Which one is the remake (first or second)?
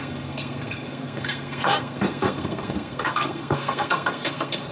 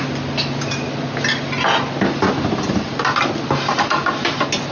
first